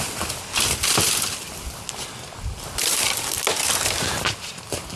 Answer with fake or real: real